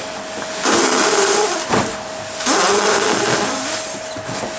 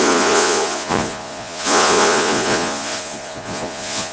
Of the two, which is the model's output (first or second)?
second